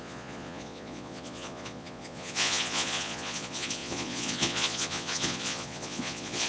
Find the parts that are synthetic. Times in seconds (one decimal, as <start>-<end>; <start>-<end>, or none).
0.0-6.5